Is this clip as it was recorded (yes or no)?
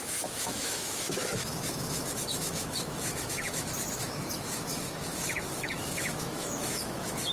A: no